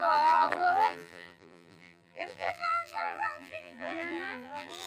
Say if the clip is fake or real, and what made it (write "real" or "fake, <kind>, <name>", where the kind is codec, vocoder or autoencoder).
fake, vocoder, BigVGAN v2